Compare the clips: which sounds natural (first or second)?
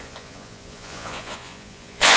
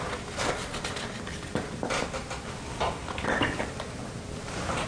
second